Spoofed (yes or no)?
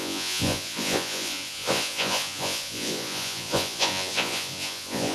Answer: yes